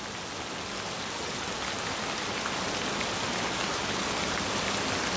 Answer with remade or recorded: recorded